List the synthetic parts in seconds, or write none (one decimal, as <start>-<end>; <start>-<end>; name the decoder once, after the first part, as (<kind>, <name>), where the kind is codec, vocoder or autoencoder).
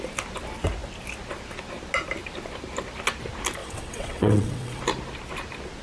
3.6-4.8 (vocoder, WaveNeXt)